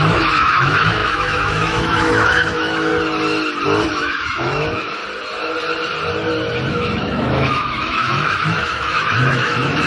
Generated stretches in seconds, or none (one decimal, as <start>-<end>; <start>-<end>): 0.0-2.9; 3.9-5.0; 6.7-9.9